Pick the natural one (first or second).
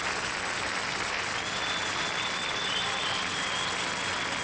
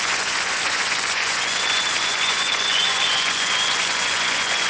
first